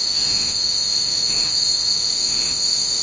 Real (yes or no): no